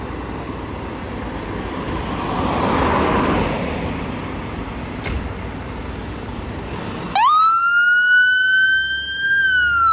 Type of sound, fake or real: real